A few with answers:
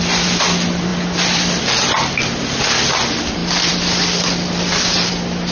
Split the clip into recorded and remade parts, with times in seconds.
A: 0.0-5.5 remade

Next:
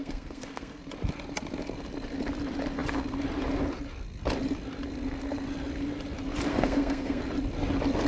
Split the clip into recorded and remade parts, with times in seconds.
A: 0.0-0.8 remade; 0.8-6.5 recorded; 6.5-7.2 remade; 7.2-8.1 recorded

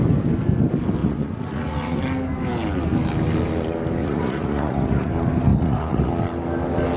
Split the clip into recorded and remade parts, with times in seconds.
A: 0.0-1.0 recorded; 1.0-2.0 remade; 2.0-4.0 recorded; 4.0-5.1 remade; 5.1-5.5 recorded; 5.5-6.1 remade; 6.1-7.0 recorded

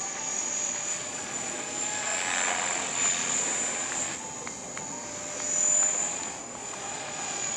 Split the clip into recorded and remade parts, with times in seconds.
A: 0.0-2.1 remade; 2.1-6.4 recorded; 6.4-7.6 remade

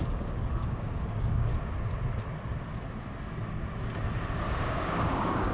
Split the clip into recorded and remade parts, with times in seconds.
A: 0.0-1.5 remade; 1.5-4.3 recorded; 4.3-5.5 remade

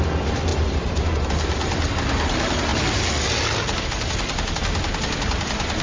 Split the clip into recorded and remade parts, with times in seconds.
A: 0.0-0.5 recorded; 0.5-1.3 remade; 1.3-5.8 recorded

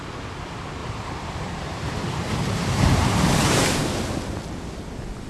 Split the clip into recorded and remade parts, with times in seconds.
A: 0.0-0.8 recorded; 0.8-3.3 remade; 3.3-5.3 recorded

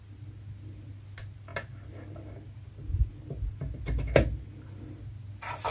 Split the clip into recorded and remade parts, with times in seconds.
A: 0.0-5.7 recorded